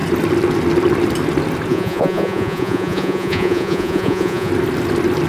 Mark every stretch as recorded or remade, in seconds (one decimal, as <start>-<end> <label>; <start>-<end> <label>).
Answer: 0.0-1.7 recorded; 1.7-4.5 remade; 4.5-5.3 recorded